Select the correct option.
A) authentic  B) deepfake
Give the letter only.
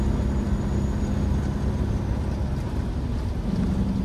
A